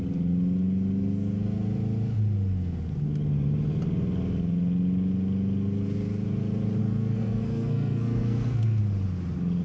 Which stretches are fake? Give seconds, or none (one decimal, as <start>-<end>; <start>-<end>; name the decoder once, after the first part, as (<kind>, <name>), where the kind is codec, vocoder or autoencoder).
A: 6.8-8.8 (codec, SNAC)